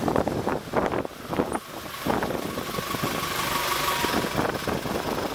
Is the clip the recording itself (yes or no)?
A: yes